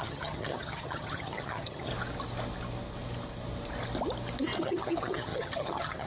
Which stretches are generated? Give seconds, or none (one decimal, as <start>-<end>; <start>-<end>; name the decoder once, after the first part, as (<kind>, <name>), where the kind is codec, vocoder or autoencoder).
0.0-1.9 (vocoder, HiFi-GAN); 4.6-6.1